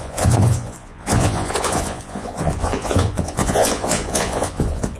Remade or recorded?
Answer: remade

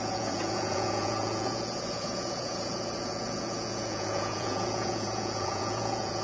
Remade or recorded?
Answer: remade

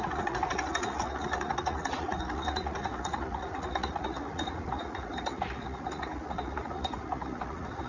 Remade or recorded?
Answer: remade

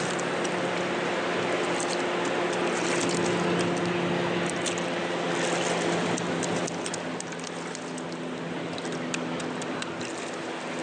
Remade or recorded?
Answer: recorded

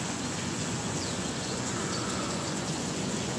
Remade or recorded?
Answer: remade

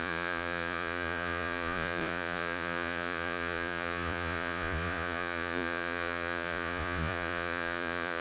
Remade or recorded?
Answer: remade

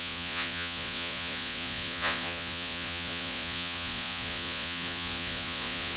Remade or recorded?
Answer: remade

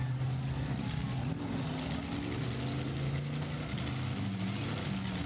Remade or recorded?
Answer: recorded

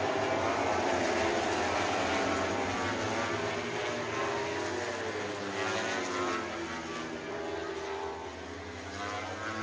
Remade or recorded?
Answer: recorded